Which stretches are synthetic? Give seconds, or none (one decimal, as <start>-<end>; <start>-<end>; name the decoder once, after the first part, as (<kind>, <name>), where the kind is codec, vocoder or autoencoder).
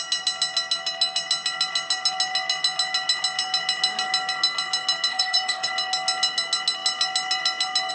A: 5.1-5.7 (codec, DAC)